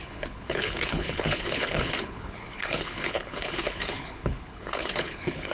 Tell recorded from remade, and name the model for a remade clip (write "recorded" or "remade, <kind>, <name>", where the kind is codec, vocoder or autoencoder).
remade, codec, HILCodec